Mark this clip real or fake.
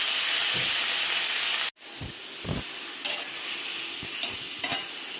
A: real